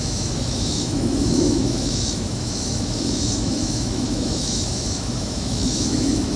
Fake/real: fake